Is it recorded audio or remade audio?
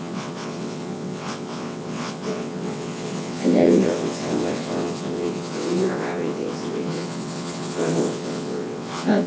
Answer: remade